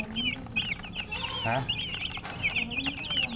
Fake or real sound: real